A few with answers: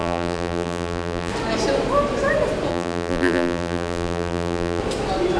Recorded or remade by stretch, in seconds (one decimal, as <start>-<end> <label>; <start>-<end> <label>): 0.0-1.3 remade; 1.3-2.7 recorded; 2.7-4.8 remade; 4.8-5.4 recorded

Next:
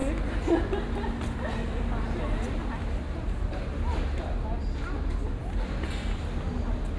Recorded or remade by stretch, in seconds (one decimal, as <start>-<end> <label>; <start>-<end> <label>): 0.0-7.0 recorded

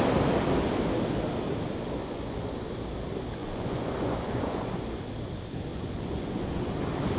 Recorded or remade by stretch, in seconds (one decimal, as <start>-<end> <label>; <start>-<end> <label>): 0.0-2.0 recorded; 2.0-2.6 remade; 2.6-3.4 recorded; 3.4-4.8 remade; 4.8-5.7 recorded; 5.7-6.7 remade; 6.7-7.2 recorded

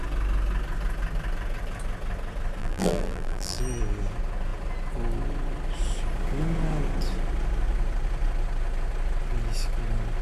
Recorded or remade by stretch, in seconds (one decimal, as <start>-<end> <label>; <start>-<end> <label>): 0.0-2.6 recorded; 2.6-3.6 remade; 3.6-10.2 recorded

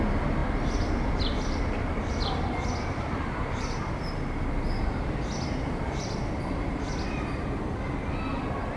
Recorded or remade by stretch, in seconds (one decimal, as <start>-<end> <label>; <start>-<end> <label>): 0.0-8.8 recorded